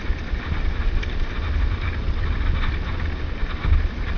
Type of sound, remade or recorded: recorded